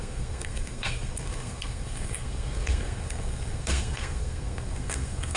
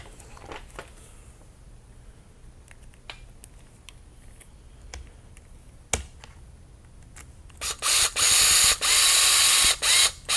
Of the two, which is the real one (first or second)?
second